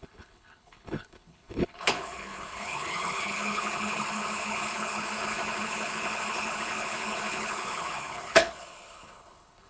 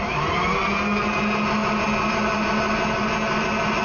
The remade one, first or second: first